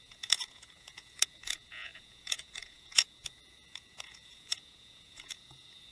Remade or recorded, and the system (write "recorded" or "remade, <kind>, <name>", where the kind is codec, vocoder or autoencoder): remade, vocoder, Vocos